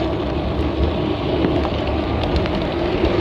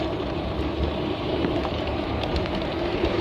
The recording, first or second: first